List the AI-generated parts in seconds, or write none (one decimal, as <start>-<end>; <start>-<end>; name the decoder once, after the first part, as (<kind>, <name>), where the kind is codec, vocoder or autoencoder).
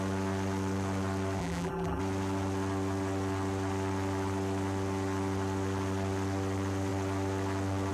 1.4-2.0 (vocoder, BigVGAN v2)